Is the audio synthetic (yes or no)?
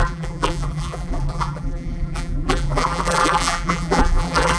yes